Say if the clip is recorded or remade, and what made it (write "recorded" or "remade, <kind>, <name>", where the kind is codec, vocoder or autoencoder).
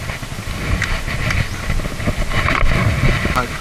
recorded